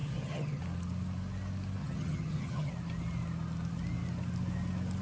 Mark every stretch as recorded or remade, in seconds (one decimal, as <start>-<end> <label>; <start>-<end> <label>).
0.0-0.6 remade; 0.6-1.8 recorded; 1.8-2.7 remade; 2.7-5.0 recorded